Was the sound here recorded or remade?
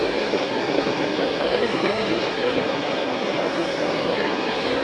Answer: remade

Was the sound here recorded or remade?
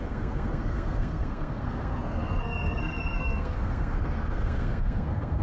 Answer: remade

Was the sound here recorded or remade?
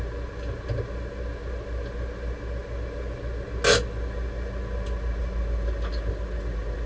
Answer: recorded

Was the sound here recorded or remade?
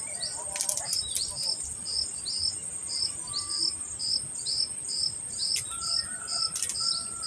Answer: recorded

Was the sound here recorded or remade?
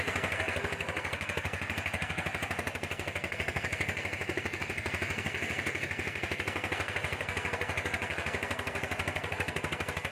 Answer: remade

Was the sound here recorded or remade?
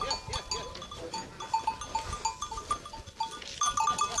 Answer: recorded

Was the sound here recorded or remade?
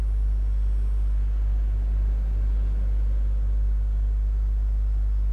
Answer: recorded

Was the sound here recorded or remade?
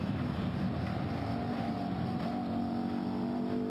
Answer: recorded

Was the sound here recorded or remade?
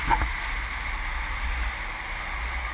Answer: recorded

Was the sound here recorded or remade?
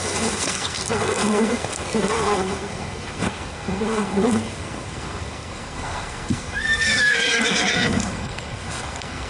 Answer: remade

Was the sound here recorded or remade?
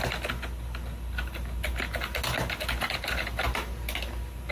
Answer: recorded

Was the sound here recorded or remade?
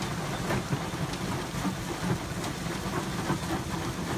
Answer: recorded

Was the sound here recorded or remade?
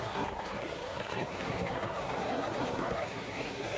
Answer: remade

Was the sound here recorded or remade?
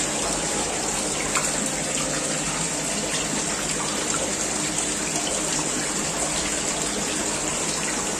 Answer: recorded